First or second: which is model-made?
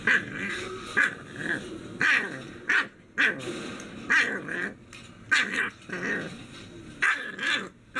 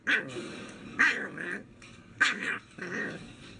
second